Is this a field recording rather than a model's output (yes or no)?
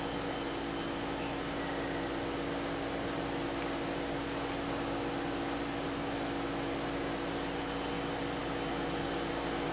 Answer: yes